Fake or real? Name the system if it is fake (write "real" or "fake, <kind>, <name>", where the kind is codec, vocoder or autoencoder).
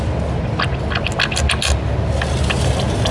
real